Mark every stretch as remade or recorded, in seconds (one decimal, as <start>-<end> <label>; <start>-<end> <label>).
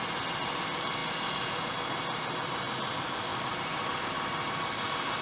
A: 0.0-5.2 recorded